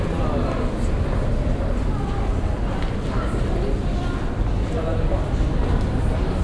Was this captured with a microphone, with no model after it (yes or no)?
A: yes